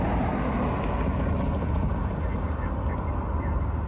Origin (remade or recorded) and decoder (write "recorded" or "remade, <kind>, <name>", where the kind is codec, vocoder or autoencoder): recorded